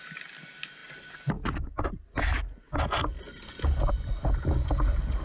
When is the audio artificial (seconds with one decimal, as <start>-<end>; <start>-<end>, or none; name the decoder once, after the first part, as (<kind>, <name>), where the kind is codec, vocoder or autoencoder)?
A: none